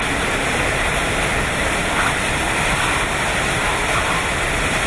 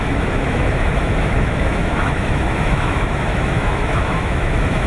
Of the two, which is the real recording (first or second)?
first